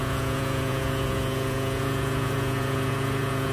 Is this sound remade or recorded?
remade